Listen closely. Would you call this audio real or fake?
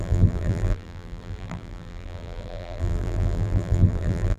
fake